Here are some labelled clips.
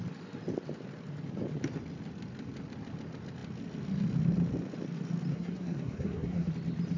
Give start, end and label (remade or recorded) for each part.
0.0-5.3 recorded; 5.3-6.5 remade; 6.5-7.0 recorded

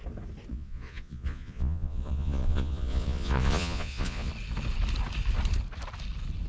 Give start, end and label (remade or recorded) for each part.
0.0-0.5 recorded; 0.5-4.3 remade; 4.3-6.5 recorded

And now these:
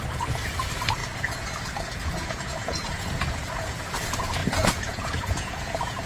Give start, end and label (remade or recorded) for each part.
0.0-1.0 recorded; 1.0-3.8 remade; 3.8-4.4 recorded; 4.4-6.1 remade

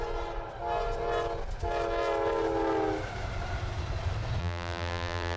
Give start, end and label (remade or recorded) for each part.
0.0-4.4 recorded; 4.4-5.4 remade

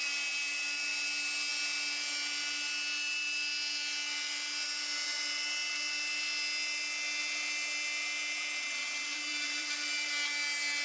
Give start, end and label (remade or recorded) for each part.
0.0-9.3 recorded; 9.3-10.1 remade; 10.1-10.8 recorded

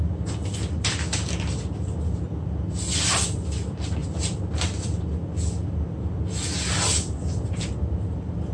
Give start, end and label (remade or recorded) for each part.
0.0-4.0 recorded; 4.0-5.0 remade; 5.0-8.5 recorded

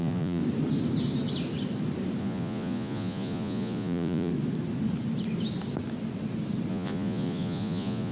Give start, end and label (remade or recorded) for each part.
0.0-0.4 remade; 0.4-2.2 recorded; 2.2-4.3 remade; 4.3-6.7 recorded; 6.7-8.1 remade